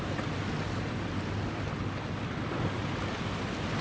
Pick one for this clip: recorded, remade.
recorded